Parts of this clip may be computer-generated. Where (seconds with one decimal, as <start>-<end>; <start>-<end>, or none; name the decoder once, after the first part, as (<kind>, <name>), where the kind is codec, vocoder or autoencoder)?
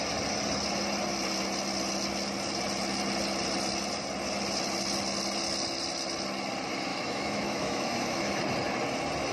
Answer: 6.9-8.4 (autoencoder, DAC-VAE)